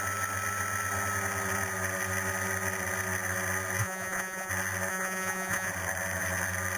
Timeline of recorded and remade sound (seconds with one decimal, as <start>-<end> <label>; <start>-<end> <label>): 0.0-3.8 recorded; 3.8-4.5 remade; 4.5-4.9 recorded; 4.9-5.7 remade; 5.7-6.8 recorded